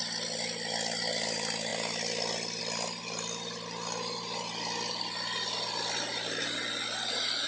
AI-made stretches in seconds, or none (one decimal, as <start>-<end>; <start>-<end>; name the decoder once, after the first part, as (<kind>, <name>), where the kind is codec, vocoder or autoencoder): none